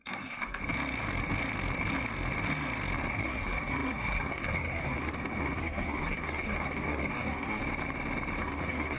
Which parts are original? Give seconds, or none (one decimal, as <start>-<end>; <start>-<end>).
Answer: 0.6-3.1; 7.6-8.4